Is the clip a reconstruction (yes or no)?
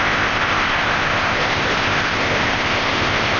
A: yes